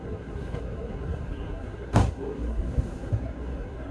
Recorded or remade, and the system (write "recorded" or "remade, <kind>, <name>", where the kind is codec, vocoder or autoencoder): remade, codec, SNAC